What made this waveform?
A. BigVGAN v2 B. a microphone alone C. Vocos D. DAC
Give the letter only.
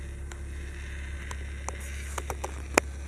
B